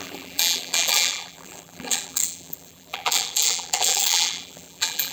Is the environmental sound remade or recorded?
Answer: remade